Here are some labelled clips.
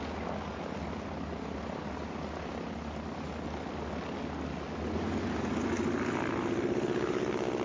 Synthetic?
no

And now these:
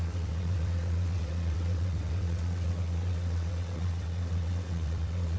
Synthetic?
yes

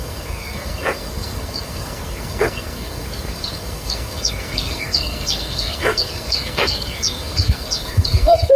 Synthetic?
yes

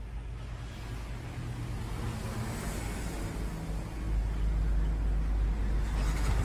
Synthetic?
no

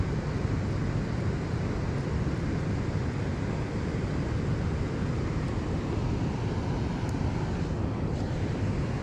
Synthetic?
no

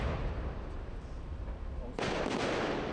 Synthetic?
no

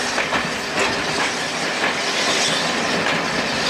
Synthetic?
no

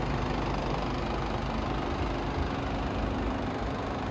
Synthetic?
no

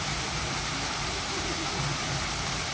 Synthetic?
no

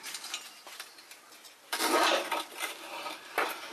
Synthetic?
yes